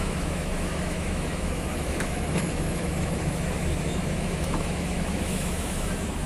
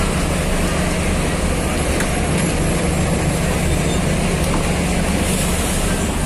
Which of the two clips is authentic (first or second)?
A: second